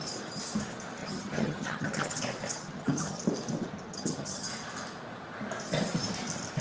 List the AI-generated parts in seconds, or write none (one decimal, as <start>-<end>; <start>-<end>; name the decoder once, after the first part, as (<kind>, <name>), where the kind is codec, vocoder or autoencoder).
1.0-2.2 (vocoder, HiFi-GAN); 2.6-3.2; 3.9-4.5